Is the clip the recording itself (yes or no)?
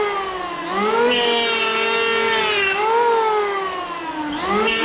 yes